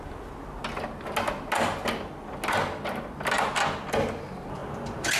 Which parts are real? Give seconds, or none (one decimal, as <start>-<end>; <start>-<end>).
0.0-5.2